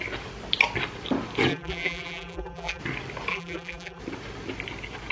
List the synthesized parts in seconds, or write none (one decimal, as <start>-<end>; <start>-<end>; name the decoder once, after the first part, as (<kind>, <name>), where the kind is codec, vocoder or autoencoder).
1.5-2.8 (vocoder, BigVGAN v2); 3.3-4.0

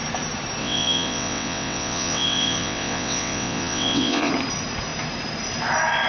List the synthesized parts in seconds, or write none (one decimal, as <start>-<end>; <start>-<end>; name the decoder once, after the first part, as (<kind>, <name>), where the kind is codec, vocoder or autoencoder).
0.6-4.3 (vocoder, WaveNeXt)

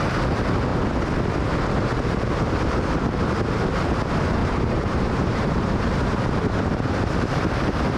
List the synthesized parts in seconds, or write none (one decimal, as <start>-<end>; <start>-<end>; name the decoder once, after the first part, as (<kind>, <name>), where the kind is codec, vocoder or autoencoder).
4.4-8.0 (vocoder, BigVGAN v2)

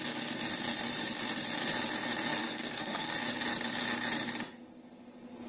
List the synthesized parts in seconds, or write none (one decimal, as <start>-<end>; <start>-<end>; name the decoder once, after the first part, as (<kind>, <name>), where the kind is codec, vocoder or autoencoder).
2.4-3.1 (codec, SNAC)